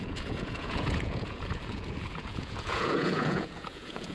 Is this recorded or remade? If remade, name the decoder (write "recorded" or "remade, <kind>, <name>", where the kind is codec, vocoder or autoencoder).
remade, vocoder, Vocos